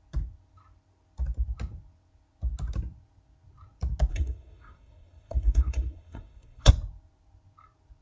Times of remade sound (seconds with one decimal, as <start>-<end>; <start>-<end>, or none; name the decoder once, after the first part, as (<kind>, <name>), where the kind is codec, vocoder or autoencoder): 4.1-6.7 (codec, SNAC)